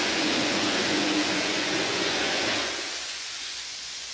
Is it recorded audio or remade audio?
remade